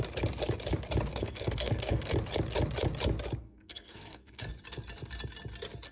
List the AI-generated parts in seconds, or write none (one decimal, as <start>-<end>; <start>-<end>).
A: 1.1-2.1; 3.4-4.5